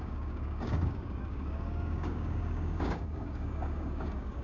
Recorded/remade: remade